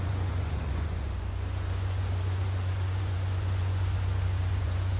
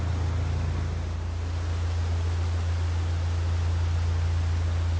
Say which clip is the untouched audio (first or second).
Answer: second